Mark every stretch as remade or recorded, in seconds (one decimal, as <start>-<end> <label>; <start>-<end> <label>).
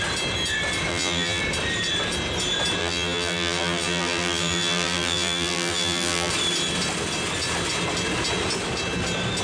0.0-0.9 recorded; 0.9-1.4 remade; 1.4-2.8 recorded; 2.8-6.3 remade; 6.3-9.4 recorded